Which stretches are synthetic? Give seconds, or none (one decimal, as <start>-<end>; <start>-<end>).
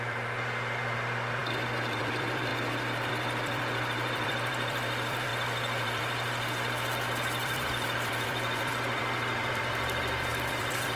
0.0-2.5; 3.1-11.0